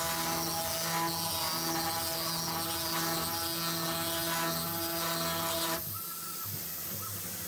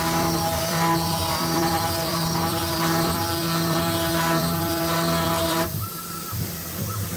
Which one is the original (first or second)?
first